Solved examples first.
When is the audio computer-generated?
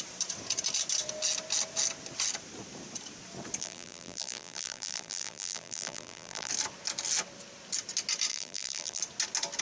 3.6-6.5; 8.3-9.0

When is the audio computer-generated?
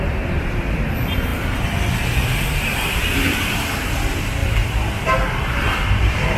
0.0-4.4; 5.1-6.4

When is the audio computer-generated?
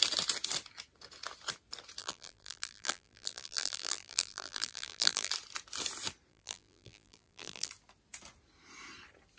2.0-5.3; 6.3-7.7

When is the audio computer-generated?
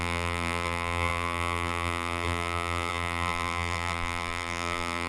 0.0-5.1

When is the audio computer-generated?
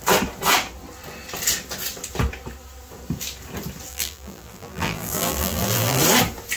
3.9-6.0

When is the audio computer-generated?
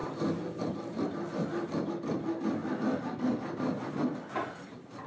0.0-1.9; 2.6-3.9